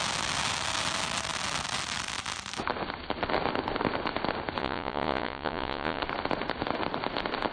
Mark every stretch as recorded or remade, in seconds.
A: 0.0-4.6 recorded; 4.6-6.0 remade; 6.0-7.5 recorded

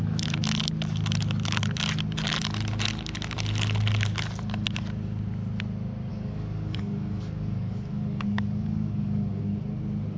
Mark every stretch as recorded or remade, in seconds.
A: 0.0-6.1 recorded; 6.1-9.4 remade; 9.4-10.2 recorded

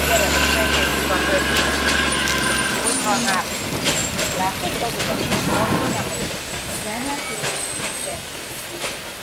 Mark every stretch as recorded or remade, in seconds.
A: 0.0-4.0 recorded; 4.0-5.0 remade; 5.0-6.2 recorded; 6.2-7.1 remade; 7.1-9.2 recorded

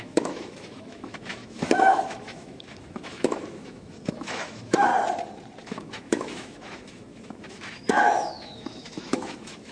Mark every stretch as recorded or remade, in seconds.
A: 0.0-4.9 remade; 4.9-5.6 recorded; 5.6-9.7 remade

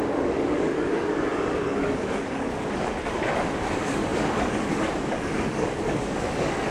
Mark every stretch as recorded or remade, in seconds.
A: 0.0-6.7 remade